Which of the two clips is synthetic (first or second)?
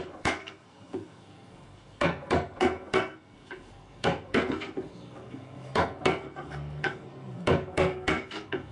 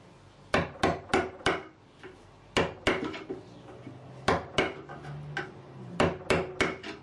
first